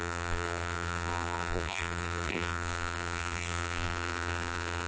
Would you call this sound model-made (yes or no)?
yes